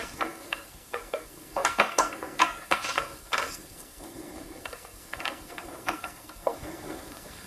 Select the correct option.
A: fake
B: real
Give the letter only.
A